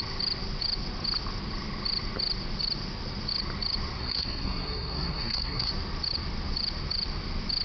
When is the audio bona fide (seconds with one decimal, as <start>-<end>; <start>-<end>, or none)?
0.0-4.0; 5.7-7.6